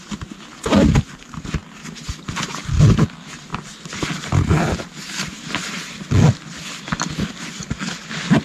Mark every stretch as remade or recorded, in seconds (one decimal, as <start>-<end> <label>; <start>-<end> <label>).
0.0-8.4 recorded